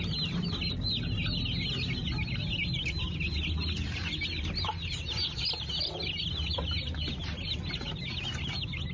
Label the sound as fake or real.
real